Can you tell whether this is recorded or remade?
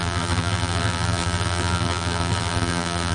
remade